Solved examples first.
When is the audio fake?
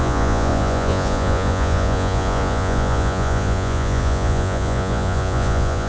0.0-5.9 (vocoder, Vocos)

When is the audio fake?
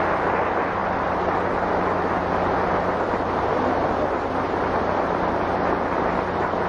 none